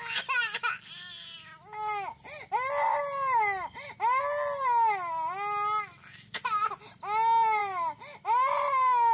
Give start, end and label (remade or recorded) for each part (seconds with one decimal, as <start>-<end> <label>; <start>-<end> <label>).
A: 0.0-9.1 recorded

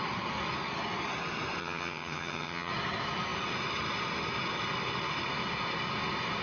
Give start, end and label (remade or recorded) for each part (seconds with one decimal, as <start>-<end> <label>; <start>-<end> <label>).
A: 0.0-1.6 recorded; 1.6-2.7 remade; 2.7-6.4 recorded